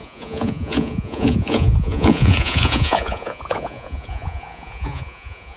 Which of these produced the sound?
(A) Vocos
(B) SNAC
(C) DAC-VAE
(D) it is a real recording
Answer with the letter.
A